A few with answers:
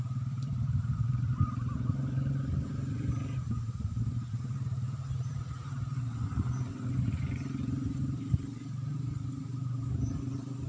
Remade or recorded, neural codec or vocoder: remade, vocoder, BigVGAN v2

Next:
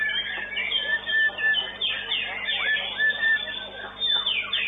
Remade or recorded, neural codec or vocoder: recorded